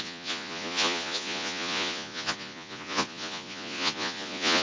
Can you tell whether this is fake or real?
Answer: fake